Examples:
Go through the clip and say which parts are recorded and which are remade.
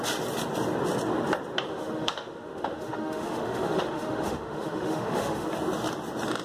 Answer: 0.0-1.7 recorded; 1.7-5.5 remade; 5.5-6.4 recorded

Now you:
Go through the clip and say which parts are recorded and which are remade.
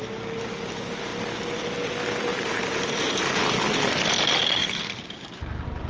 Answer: 0.0-2.3 recorded; 2.3-3.4 remade; 3.4-4.6 recorded; 4.6-5.4 remade; 5.4-5.9 recorded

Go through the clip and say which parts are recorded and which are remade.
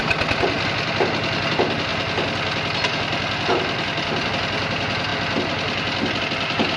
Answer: 0.0-6.8 recorded